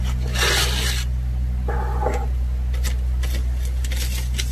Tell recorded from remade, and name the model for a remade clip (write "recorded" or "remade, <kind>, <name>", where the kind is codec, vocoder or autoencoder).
recorded